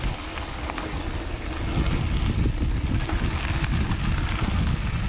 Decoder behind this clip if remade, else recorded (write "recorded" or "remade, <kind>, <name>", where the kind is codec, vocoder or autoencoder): recorded